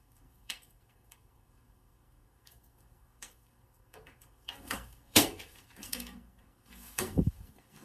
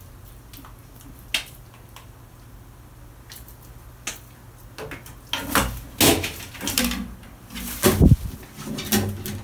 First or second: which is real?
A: second